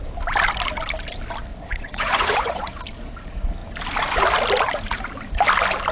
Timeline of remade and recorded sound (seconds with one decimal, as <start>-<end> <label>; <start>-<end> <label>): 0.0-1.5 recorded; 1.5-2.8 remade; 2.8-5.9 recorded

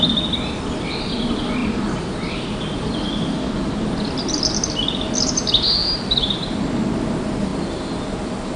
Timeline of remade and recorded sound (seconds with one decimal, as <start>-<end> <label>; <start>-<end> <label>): 0.0-8.6 recorded

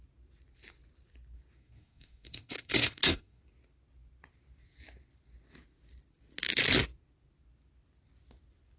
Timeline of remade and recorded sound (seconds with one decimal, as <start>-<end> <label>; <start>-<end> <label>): 0.0-1.6 recorded; 1.6-3.4 remade; 3.4-8.8 recorded